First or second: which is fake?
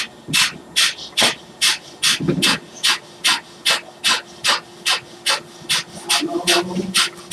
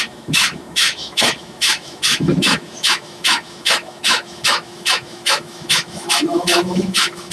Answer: second